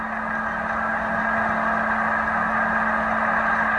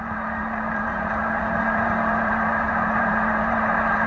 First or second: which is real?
first